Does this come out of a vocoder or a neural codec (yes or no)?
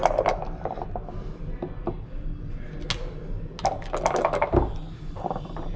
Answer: no